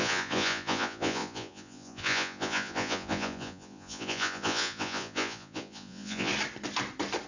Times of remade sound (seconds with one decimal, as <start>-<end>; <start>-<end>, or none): 0.0-6.3